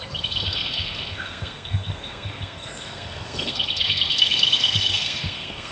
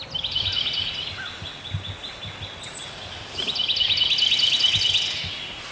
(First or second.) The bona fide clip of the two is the second